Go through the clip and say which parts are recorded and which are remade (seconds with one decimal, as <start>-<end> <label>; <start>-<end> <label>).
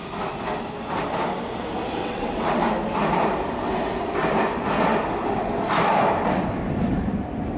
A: 0.0-2.0 recorded; 2.0-2.6 remade; 2.6-7.6 recorded